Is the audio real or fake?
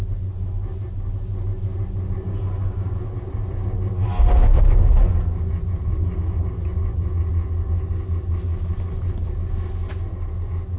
real